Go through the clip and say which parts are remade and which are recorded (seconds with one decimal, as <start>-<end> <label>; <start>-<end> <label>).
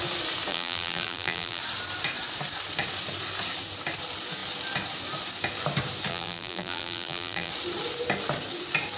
0.0-0.5 recorded; 0.5-1.6 remade; 1.6-6.1 recorded; 6.1-7.5 remade; 7.5-9.0 recorded